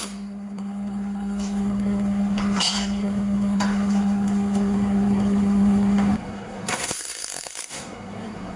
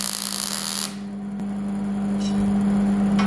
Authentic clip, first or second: second